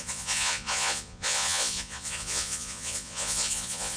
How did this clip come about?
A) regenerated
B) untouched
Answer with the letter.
A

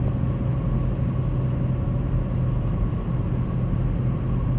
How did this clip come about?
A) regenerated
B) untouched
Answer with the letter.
B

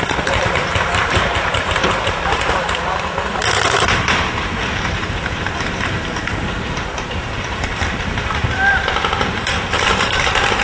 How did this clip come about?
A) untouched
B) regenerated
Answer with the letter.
B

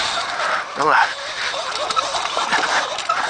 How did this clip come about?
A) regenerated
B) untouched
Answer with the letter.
A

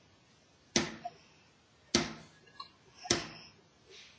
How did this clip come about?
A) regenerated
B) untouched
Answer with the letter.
B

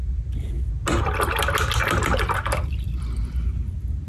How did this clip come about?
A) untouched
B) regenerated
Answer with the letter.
A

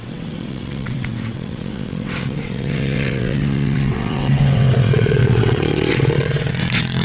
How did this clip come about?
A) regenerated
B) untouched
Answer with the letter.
A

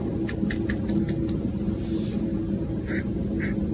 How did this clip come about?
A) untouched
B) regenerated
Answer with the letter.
A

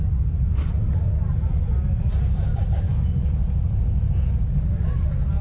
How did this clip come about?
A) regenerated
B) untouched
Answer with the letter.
B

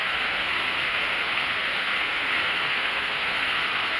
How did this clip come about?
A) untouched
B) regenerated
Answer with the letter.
B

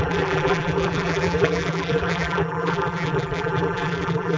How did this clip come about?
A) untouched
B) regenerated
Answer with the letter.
B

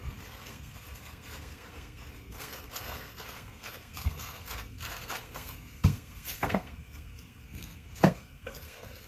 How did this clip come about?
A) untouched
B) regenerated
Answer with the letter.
B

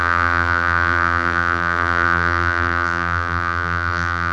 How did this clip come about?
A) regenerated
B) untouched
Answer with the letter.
A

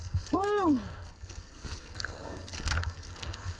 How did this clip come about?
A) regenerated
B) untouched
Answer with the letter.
A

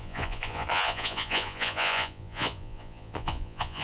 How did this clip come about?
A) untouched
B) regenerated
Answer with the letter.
B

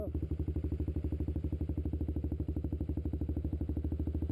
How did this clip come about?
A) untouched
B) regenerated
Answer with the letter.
A